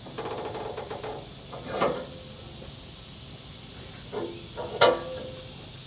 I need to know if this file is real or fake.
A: real